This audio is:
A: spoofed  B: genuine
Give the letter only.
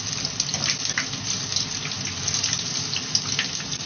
B